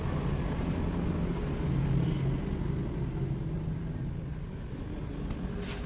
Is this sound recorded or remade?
recorded